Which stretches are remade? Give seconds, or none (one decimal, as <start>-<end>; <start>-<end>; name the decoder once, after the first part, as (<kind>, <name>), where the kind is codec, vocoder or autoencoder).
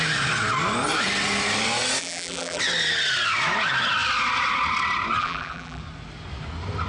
2.0-2.6 (vocoder, BigVGAN v2); 5.2-5.8